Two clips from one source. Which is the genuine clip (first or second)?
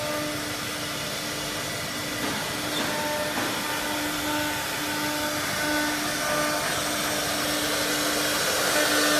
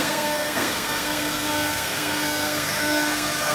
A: first